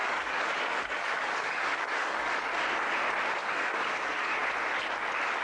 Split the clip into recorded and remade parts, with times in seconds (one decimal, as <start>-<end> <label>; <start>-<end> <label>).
0.0-2.5 remade; 2.5-3.4 recorded; 3.4-4.4 remade; 4.4-5.4 recorded